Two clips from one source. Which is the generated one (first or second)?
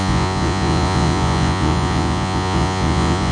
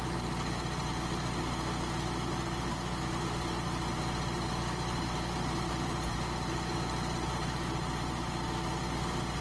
first